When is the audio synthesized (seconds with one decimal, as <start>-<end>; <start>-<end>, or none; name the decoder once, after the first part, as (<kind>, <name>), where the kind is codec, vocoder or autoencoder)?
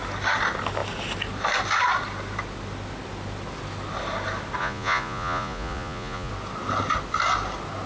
4.6-6.3 (vocoder, Vocos)